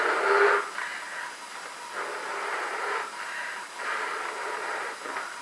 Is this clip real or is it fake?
real